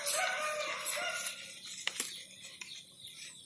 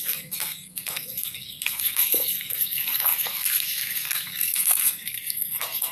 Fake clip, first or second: second